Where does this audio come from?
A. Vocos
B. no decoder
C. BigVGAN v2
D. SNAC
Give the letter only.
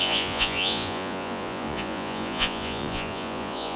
A